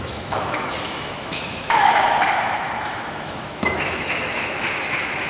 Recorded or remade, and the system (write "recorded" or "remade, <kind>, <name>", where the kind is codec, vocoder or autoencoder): remade, autoencoder, DAC-VAE